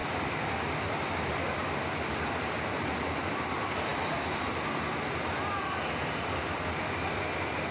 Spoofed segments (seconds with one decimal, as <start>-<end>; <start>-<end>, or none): 0.0-0.6; 3.9-6.4